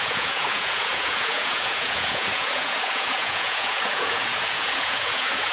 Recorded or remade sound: remade